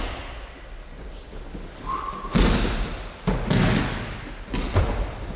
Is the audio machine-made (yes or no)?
no